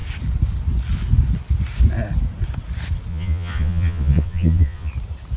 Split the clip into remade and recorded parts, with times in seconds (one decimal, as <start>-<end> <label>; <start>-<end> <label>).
0.0-3.1 recorded; 3.1-4.9 remade; 4.9-5.4 recorded